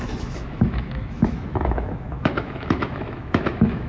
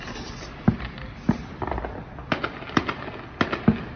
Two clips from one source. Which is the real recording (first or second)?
second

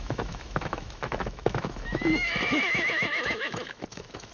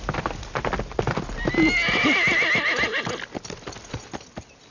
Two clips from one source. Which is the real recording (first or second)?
second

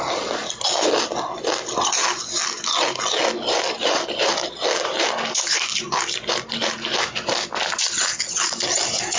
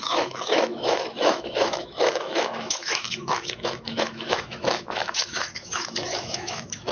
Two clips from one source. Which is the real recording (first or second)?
first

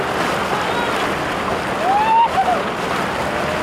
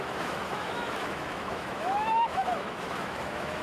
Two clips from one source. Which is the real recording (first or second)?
first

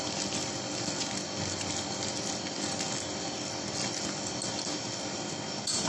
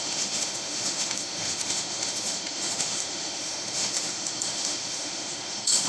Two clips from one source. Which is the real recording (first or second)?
first